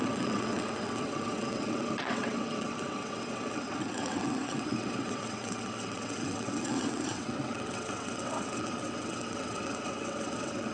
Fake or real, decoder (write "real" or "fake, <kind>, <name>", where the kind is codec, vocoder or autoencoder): fake, vocoder, WaveNeXt